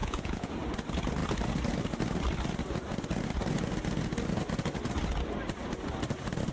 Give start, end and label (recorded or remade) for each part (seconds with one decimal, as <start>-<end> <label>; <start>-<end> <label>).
0.0-0.5 remade; 0.5-6.5 recorded